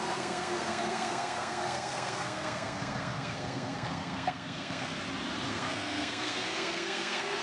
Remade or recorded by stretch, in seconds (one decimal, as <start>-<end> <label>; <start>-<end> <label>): 0.0-4.9 remade; 4.9-5.5 recorded; 5.5-7.4 remade